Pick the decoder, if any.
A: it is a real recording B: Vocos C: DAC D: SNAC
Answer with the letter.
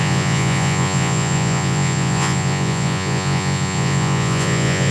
B